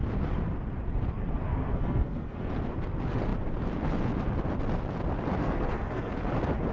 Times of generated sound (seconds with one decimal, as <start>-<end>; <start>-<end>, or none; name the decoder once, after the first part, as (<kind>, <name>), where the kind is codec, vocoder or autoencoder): 1.5-2.5 (codec, SNAC); 5.4-6.1